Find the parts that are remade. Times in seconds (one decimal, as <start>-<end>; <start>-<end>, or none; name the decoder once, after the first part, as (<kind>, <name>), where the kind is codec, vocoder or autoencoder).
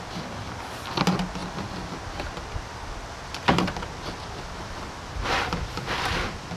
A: none